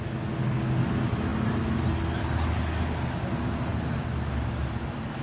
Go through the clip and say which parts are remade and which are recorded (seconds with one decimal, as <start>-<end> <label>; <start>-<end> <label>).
0.0-5.2 recorded